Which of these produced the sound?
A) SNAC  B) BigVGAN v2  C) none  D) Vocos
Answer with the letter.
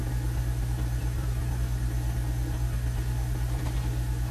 C